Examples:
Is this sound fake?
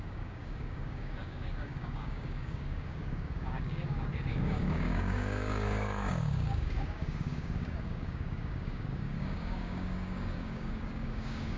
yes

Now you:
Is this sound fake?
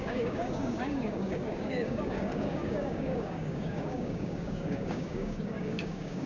yes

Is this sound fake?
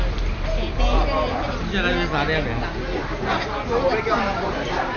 no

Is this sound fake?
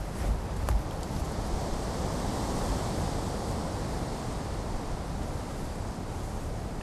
no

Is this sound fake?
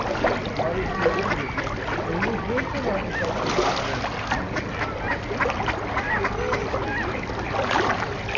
no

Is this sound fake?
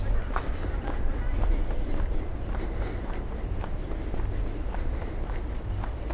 no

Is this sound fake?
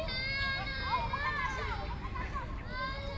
no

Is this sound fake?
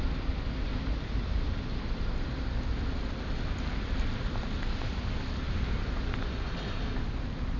no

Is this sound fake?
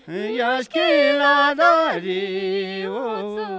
no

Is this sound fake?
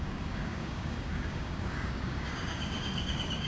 yes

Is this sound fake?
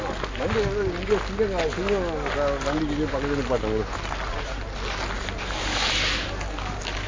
no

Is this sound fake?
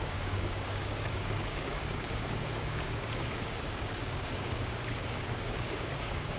yes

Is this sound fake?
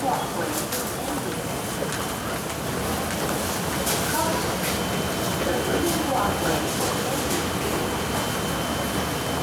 no